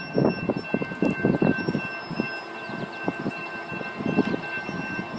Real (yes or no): yes